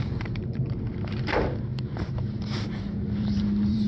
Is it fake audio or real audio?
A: fake